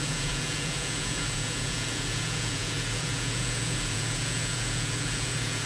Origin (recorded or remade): remade